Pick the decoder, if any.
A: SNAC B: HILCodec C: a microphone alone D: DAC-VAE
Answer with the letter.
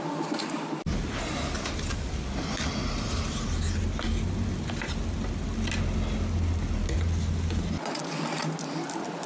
C